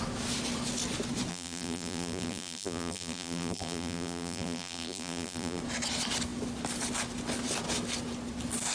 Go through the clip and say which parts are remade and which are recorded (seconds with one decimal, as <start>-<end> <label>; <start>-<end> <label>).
0.0-1.3 recorded; 1.3-5.6 remade; 5.6-8.7 recorded